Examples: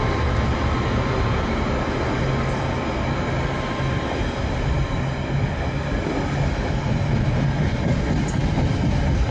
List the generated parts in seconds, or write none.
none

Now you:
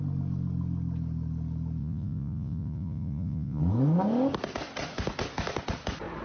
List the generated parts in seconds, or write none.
1.8-3.6

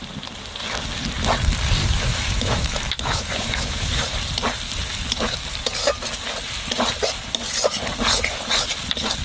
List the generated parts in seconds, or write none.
1.8-3.9

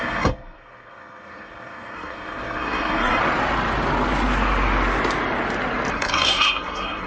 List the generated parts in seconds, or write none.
0.0-3.2; 5.9-7.1